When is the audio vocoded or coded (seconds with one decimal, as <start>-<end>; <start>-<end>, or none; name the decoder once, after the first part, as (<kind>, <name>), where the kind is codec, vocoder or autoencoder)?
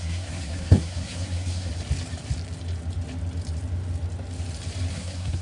0.0-1.7 (codec, SNAC); 4.9-5.4